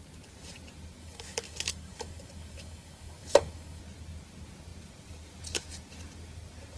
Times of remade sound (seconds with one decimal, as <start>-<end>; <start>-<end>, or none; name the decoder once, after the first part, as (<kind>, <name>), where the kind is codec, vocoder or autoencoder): 1.0-3.8 (codec, DAC)